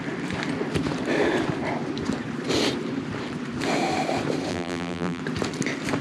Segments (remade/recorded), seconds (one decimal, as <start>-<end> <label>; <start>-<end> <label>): 0.0-4.5 recorded; 4.5-5.2 remade; 5.2-6.0 recorded